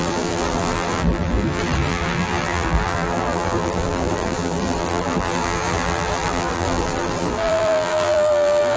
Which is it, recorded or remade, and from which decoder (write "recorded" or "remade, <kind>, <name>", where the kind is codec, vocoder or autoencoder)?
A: remade, vocoder, BigVGAN v2